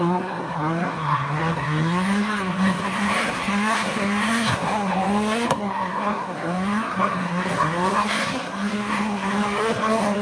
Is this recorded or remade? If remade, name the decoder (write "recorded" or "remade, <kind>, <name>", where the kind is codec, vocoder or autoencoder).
remade, codec, SNAC